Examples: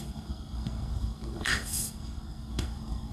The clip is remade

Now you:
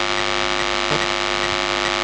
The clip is recorded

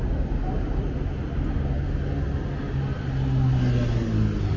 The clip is recorded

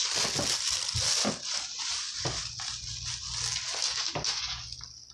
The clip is recorded